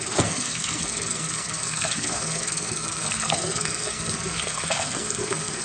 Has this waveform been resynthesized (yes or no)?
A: yes